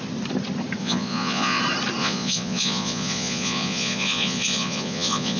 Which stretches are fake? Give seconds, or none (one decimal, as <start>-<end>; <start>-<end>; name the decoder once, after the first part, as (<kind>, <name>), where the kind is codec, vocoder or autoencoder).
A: 0.8-1.6 (vocoder, Vocos); 2.0-5.4